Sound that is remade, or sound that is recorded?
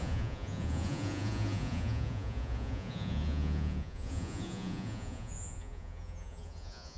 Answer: remade